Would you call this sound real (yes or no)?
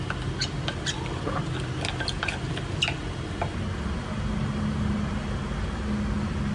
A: yes